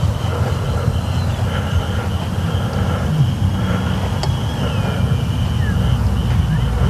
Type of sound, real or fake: real